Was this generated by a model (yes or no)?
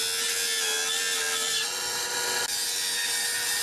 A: no